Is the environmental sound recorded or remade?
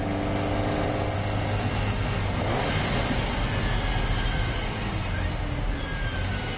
recorded